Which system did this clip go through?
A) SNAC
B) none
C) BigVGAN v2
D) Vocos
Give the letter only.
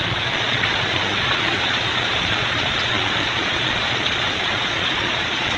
D